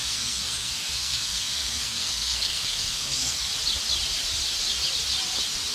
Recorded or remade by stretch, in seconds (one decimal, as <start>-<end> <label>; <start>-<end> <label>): 0.0-3.5 remade; 3.5-5.7 recorded